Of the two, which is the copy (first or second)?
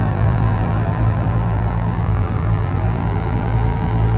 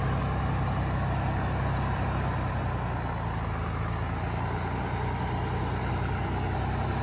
first